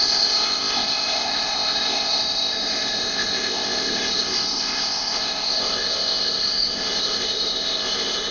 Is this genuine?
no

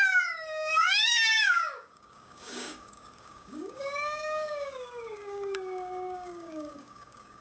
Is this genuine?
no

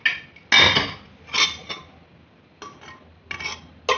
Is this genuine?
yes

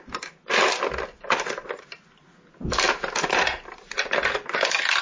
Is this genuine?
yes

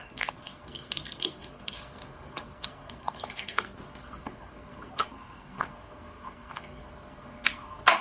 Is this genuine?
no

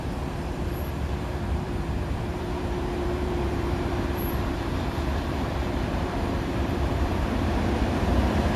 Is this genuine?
no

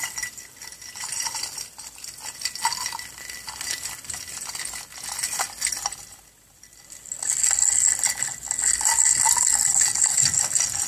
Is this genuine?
yes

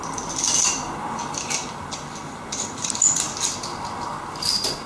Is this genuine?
yes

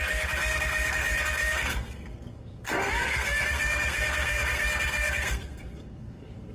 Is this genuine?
no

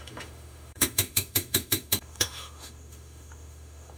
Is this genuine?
no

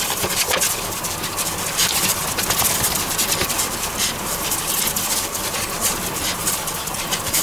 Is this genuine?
no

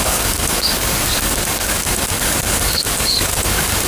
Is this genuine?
no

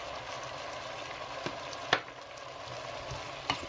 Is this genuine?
yes